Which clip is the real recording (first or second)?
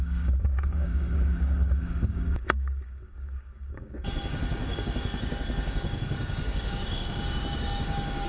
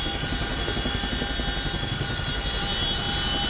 second